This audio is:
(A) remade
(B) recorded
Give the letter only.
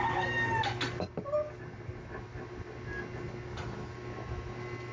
B